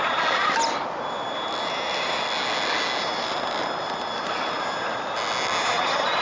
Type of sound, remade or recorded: recorded